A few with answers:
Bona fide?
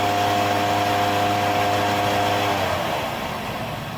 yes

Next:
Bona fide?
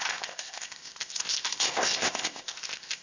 no